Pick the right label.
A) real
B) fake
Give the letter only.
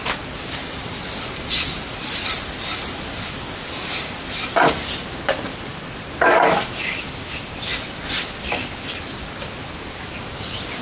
A